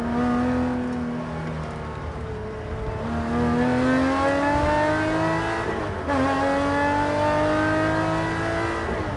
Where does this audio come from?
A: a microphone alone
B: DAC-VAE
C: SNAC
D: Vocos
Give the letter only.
A